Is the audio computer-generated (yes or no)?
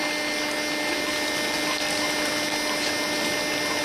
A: no